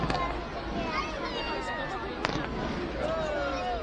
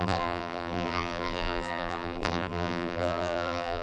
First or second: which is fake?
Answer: second